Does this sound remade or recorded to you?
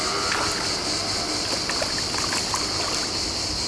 recorded